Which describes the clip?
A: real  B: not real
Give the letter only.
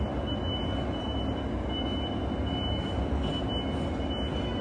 A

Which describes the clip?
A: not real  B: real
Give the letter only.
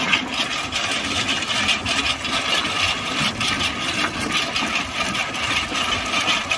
B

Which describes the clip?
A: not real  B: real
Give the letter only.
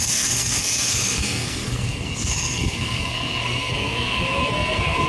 A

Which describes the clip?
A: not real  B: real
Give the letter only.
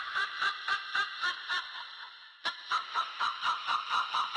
A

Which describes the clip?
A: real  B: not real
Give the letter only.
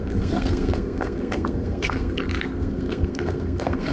B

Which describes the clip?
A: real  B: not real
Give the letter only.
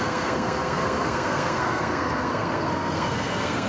B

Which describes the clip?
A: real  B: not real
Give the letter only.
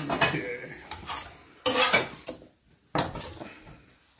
A